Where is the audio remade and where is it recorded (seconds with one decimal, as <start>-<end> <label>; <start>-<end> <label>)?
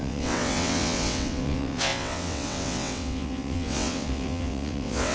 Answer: 0.0-5.1 remade